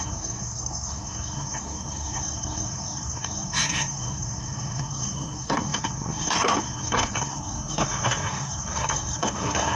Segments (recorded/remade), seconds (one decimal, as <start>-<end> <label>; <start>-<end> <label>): 0.0-9.8 remade